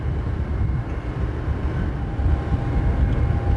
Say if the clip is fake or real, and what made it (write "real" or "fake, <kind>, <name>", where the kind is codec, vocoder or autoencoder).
real